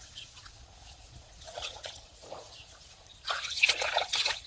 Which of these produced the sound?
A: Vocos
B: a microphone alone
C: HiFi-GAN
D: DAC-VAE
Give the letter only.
A